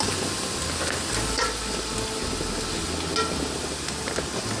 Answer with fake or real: real